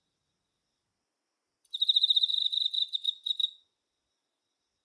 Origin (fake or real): real